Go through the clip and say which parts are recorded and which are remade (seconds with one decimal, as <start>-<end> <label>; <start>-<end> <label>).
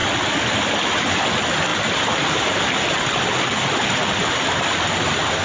0.0-1.7 recorded; 1.7-4.9 remade; 4.9-5.4 recorded